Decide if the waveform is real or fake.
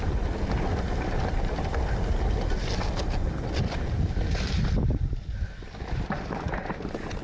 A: real